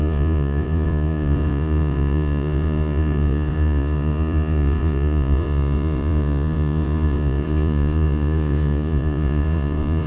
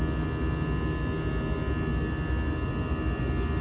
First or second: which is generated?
first